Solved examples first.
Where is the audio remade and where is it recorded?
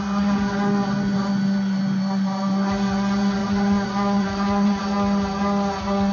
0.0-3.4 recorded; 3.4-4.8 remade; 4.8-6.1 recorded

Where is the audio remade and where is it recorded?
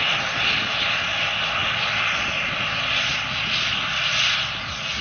0.0-5.0 recorded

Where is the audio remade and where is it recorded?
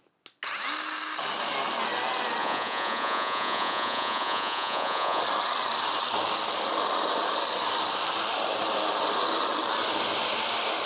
0.0-2.4 recorded; 2.4-5.2 remade; 5.2-10.9 recorded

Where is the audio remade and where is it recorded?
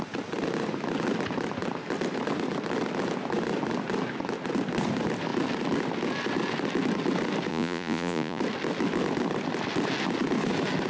0.0-7.5 recorded; 7.5-8.4 remade; 8.4-10.9 recorded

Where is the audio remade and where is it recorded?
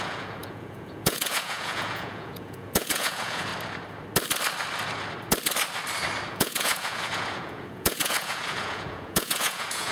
0.0-3.5 remade; 3.5-6.3 recorded; 6.3-9.9 remade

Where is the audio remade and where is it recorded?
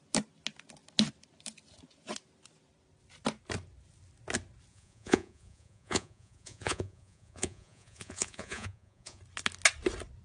0.0-4.7 recorded; 4.7-9.2 remade; 9.2-10.2 recorded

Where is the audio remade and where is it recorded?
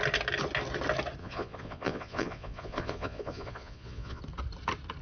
0.0-1.2 recorded; 1.2-4.2 remade; 4.2-5.0 recorded